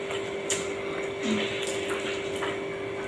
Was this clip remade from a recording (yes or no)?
no